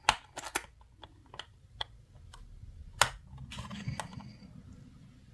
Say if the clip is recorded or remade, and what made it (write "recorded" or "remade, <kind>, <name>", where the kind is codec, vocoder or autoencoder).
recorded